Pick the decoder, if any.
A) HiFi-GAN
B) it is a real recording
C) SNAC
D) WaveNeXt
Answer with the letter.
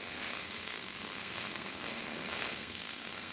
C